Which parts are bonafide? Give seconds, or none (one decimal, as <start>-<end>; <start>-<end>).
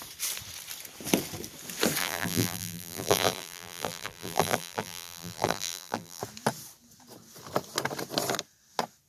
0.0-2.0; 6.2-9.1